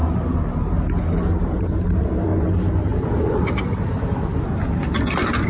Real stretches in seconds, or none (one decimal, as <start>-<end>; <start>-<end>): 0.0-1.3; 2.3-3.9